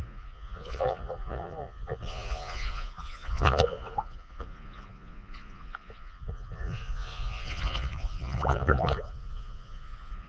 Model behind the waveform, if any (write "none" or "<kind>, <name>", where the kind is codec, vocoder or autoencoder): vocoder, Vocos